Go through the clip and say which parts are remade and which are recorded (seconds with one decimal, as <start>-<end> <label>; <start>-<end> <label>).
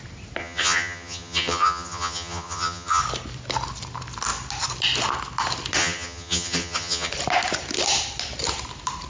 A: 0.0-0.4 recorded; 0.4-3.0 remade; 3.0-5.8 recorded; 5.8-7.1 remade; 7.1-9.1 recorded